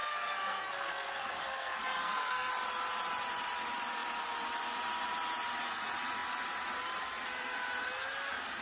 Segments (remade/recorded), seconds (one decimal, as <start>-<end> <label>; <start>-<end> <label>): 0.0-2.5 remade; 2.5-8.6 recorded